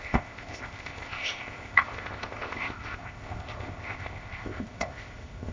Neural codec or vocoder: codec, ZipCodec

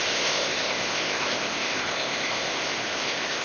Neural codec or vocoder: codec, ZipCodec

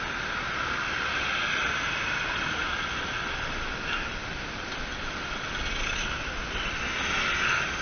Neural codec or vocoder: none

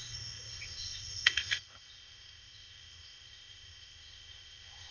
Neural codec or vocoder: codec, ZipCodec